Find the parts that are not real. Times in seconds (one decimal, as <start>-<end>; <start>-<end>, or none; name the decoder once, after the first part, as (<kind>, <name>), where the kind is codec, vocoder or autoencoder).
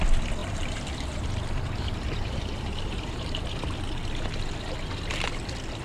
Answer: 0.4-3.4 (vocoder, BigVGAN v2)